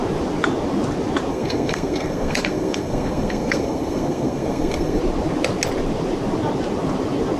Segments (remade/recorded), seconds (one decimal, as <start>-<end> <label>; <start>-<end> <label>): 0.0-1.3 recorded; 1.3-5.0 remade; 5.0-7.4 recorded